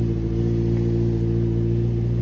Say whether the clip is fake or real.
real